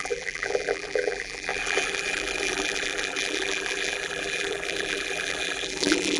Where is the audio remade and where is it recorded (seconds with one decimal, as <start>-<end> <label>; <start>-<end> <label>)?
0.0-6.2 remade